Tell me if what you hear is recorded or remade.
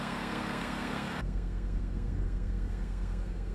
remade